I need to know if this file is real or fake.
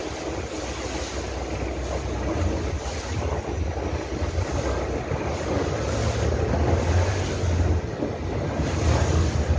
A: real